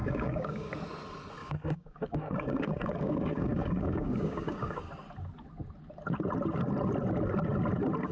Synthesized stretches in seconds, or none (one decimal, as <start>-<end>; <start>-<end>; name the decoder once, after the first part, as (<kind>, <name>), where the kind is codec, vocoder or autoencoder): 0.0-0.7 (codec, DAC); 1.4-4.8